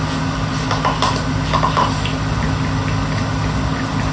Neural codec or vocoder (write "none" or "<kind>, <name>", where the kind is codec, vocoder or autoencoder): none